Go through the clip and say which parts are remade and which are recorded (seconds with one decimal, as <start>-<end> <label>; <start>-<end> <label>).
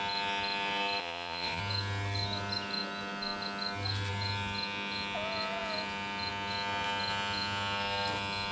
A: 0.0-1.0 recorded; 1.0-1.6 remade; 1.6-8.5 recorded